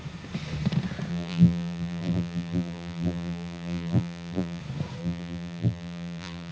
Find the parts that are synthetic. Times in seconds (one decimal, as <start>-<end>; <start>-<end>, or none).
1.1-4.6; 5.0-6.5